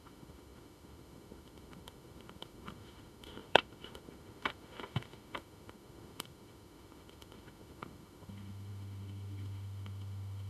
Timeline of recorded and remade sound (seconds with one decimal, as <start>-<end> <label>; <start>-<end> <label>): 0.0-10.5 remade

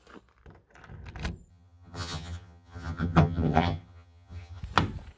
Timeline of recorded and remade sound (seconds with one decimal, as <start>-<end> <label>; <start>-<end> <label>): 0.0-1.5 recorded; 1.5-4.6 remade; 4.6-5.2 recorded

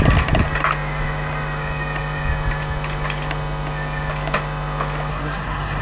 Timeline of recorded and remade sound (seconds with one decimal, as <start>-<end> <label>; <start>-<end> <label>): 0.0-5.1 recorded; 5.1-5.8 remade

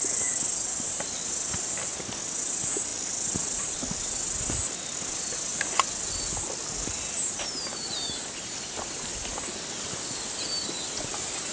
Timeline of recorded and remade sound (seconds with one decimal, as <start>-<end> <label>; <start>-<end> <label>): 0.0-11.5 recorded

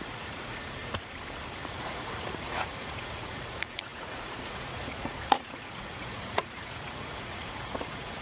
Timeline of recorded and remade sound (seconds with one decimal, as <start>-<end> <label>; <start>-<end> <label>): 0.0-0.8 remade; 0.8-1.6 recorded; 1.6-8.2 remade

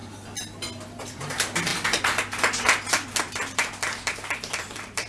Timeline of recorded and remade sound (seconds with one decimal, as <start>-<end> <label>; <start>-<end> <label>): 0.0-1.0 recorded; 1.0-1.7 remade; 1.7-3.2 recorded; 3.2-5.1 remade